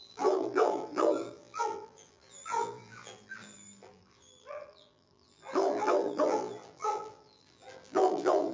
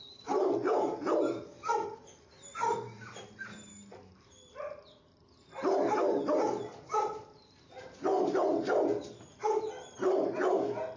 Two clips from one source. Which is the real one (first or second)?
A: second